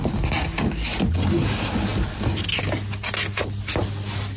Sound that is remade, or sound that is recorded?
recorded